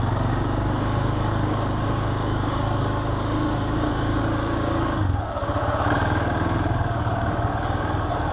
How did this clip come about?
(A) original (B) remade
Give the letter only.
B